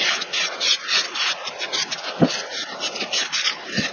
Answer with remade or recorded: recorded